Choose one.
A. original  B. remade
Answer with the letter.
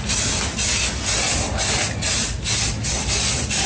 A